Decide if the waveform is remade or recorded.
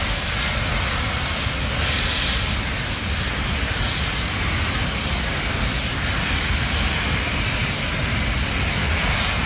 recorded